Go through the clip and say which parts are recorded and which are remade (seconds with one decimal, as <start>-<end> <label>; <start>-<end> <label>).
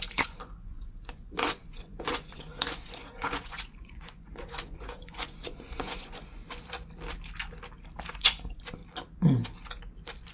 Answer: 0.0-6.4 remade; 6.4-8.1 recorded; 8.1-8.8 remade; 8.8-10.3 recorded